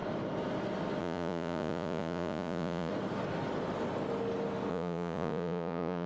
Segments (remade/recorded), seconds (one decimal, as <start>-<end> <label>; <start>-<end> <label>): 0.0-1.0 recorded; 1.0-2.9 remade; 2.9-4.7 recorded; 4.7-6.1 remade